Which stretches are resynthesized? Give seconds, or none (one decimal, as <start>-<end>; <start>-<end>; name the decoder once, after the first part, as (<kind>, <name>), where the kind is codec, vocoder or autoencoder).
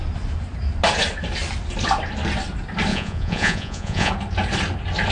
2.9-4.1 (vocoder, Vocos)